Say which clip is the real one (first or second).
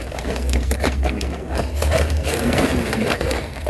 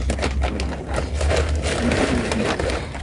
second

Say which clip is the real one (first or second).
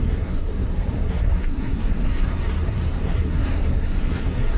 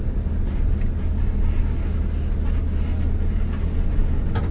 second